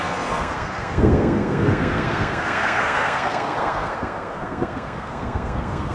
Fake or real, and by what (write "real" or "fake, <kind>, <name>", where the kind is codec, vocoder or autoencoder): fake, codec, SNAC